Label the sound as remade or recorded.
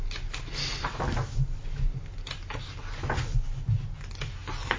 recorded